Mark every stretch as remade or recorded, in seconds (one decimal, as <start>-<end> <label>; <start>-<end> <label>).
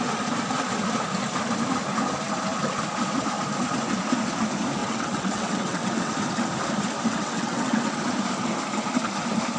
0.0-4.8 recorded; 4.8-6.1 remade; 6.1-7.1 recorded; 7.1-8.0 remade; 8.0-9.6 recorded